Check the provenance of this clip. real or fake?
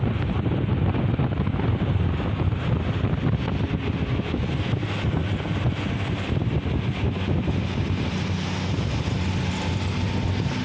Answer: real